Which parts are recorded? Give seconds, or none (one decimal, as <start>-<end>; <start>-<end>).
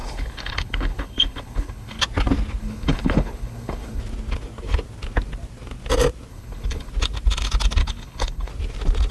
2.0-2.6; 4.0-6.3; 6.9-7.8; 8.5-9.1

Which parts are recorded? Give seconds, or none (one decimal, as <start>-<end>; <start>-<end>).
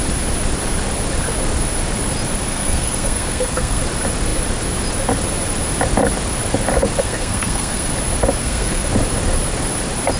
0.0-2.5; 3.8-7.0; 7.9-8.4; 8.9-10.2